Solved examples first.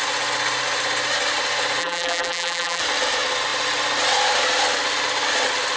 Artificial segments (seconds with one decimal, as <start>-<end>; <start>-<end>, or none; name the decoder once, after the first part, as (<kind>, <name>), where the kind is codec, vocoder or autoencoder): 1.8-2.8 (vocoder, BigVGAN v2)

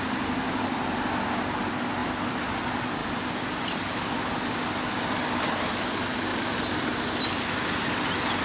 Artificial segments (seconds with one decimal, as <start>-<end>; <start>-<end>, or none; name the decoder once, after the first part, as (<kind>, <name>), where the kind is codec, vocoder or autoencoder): 2.0-2.6 (vocoder, BigVGAN v2); 3.0-5.7; 6.3-6.9

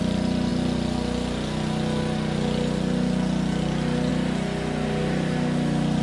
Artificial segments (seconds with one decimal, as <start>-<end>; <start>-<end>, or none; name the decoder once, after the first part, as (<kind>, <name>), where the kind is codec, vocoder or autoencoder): none

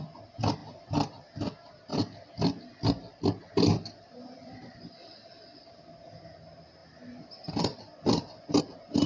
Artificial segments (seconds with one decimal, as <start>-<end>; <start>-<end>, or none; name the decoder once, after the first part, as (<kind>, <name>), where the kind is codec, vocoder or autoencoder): 0.6-1.4 (vocoder, BigVGAN v2); 1.9-4.9; 6.8-8.6

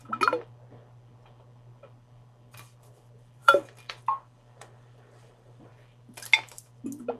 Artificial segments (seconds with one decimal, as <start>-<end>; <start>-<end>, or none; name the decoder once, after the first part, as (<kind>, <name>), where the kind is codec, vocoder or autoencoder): 3.4-5.7 (vocoder, BigVGAN v2)